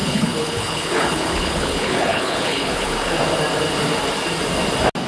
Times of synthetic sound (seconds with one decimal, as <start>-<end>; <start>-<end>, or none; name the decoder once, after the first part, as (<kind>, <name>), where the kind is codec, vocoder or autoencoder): 0.0-3.1 (codec, HILCodec)